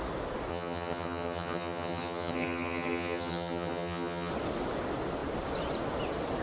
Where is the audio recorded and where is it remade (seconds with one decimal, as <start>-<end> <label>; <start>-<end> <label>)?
0.0-0.5 recorded; 0.5-4.3 remade; 4.3-6.4 recorded